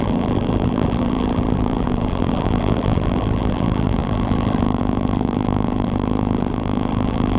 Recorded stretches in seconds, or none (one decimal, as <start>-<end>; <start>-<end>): none

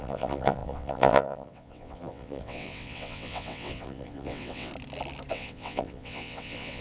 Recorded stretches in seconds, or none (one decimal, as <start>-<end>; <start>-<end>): 4.7-5.3

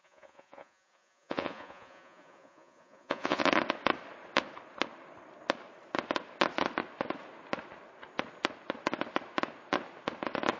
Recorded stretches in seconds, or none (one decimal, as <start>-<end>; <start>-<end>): 3.4-10.6